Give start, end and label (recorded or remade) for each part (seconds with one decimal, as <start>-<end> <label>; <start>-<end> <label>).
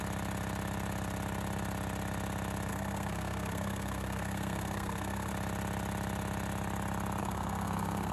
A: 0.0-2.7 recorded; 2.7-5.3 remade; 5.3-7.2 recorded; 7.2-8.1 remade